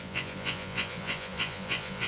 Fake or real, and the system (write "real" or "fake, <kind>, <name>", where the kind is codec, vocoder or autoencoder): fake, vocoder, Vocos